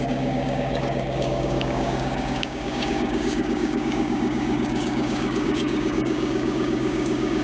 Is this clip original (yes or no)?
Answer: no